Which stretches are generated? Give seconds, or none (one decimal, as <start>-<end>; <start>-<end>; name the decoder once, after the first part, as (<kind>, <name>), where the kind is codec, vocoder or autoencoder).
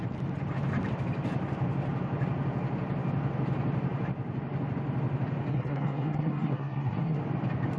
5.5-7.2 (codec, SNAC)